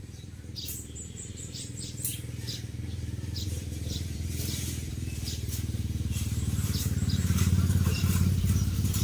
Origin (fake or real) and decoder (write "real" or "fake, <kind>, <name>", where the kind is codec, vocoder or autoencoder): fake, vocoder, BigVGAN v2